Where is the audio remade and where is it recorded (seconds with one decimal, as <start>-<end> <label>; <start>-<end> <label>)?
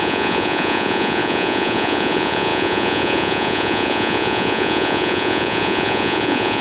0.0-6.6 remade